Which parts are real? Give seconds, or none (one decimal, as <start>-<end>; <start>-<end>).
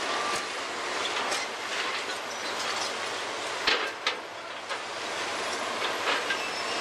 0.0-6.8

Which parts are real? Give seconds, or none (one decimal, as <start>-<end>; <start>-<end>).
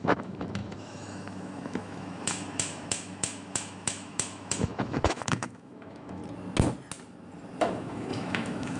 6.2-7.6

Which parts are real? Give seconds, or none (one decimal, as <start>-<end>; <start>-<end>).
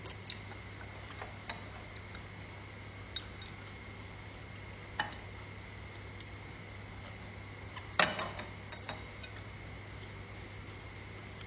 0.0-11.5